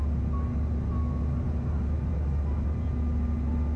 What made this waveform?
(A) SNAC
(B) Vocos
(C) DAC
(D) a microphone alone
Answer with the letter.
D